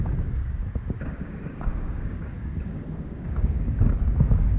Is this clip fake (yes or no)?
yes